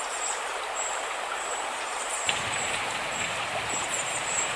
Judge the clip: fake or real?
fake